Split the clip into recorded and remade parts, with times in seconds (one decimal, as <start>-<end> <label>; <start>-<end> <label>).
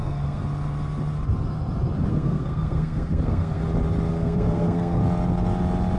0.0-0.4 remade; 0.4-2.1 recorded; 2.1-3.6 remade; 3.6-4.1 recorded; 4.1-5.0 remade; 5.0-6.0 recorded